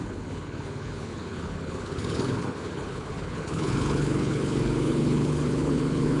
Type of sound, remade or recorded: remade